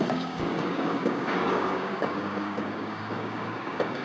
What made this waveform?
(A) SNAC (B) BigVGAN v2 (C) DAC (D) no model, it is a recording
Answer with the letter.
C